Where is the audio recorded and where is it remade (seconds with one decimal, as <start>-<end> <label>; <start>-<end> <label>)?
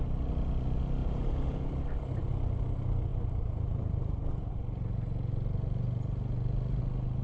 0.0-1.0 recorded; 1.0-1.7 remade; 1.7-7.2 recorded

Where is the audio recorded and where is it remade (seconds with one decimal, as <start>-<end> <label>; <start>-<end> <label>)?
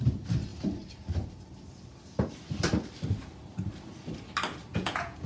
0.0-4.7 recorded; 4.7-5.3 remade